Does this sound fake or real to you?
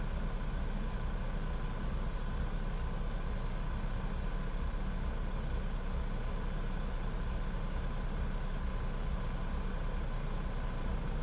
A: real